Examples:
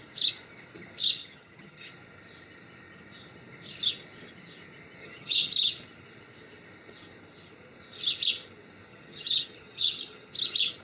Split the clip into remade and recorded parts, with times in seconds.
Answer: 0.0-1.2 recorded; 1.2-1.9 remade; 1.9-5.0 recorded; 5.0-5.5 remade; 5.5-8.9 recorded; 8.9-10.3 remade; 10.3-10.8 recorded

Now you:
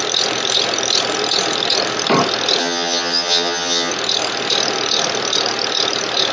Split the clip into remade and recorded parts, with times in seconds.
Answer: 0.0-2.6 recorded; 2.6-3.9 remade; 3.9-6.3 recorded

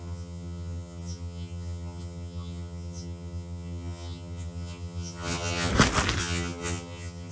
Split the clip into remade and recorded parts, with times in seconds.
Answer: 0.0-5.7 remade; 5.7-6.2 recorded; 6.2-7.3 remade

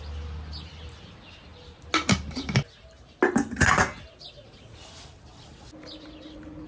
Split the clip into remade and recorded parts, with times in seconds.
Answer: 0.0-6.7 recorded

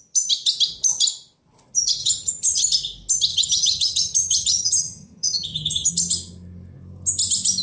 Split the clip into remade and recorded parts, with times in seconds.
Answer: 0.0-2.0 recorded; 2.0-2.6 remade; 2.6-3.3 recorded; 3.3-5.9 remade; 5.9-7.6 recorded

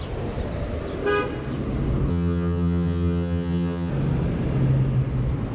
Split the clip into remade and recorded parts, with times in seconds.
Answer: 0.0-2.1 recorded; 2.1-3.9 remade; 3.9-5.5 recorded

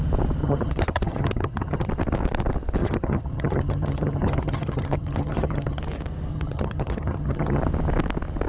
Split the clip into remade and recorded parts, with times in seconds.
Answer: 0.0-0.4 recorded; 0.4-1.9 remade; 1.9-2.8 recorded; 2.8-5.8 remade; 5.8-6.3 recorded; 6.3-7.6 remade; 7.6-8.5 recorded

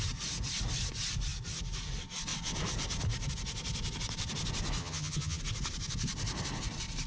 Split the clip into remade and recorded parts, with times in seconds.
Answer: 0.0-4.8 recorded; 4.8-5.4 remade; 5.4-7.1 recorded